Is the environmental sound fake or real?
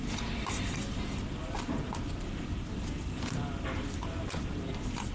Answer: real